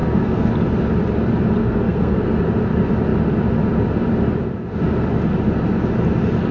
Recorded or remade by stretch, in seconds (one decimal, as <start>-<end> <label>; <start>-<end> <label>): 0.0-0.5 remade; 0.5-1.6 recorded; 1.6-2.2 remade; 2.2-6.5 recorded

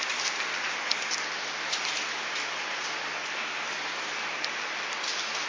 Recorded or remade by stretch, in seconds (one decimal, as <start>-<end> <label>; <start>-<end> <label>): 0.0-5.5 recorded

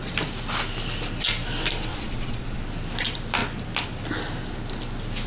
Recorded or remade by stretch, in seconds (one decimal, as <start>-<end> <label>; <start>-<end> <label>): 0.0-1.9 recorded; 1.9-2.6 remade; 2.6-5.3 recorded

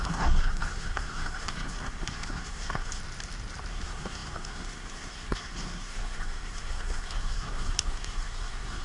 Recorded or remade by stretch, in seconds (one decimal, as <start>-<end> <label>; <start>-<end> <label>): 0.0-3.0 remade; 3.0-3.7 recorded; 3.7-8.8 remade

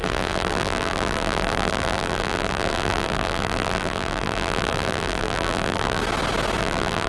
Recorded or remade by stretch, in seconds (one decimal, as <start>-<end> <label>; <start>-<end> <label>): 0.0-6.0 remade; 6.0-6.6 recorded; 6.6-7.1 remade

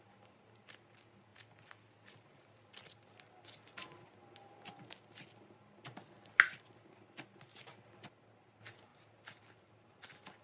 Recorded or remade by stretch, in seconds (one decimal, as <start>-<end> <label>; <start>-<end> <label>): 0.0-10.4 recorded

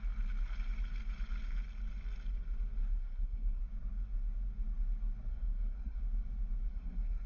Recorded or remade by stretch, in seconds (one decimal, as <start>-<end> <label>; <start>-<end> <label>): 0.0-2.8 recorded; 2.8-3.6 remade; 3.6-5.3 recorded; 5.3-6.0 remade; 6.0-6.7 recorded; 6.7-7.3 remade